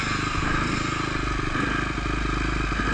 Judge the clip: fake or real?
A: real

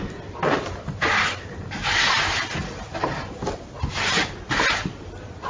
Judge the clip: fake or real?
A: real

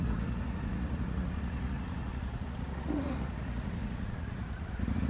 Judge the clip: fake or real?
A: fake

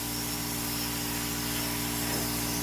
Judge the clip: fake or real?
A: real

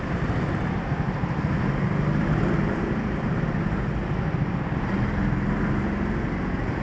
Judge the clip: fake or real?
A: real